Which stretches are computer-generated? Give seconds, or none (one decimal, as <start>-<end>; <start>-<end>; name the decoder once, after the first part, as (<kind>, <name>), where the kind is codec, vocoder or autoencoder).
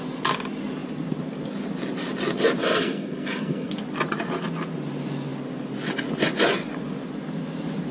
2.6-3.7 (codec, SNAC)